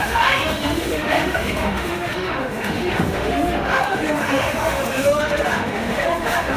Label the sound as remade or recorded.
remade